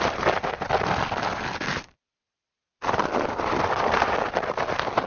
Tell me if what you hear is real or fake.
real